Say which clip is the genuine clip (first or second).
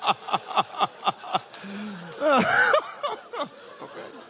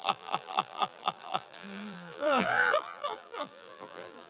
first